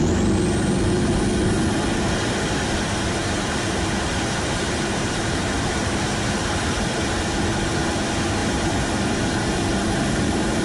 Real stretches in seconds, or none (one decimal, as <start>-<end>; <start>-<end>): 0.0-3.2; 6.5-8.4